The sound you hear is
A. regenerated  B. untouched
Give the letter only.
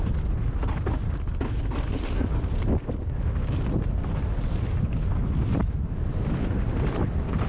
B